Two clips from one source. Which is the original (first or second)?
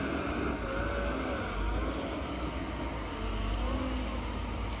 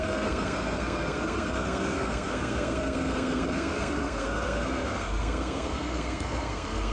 first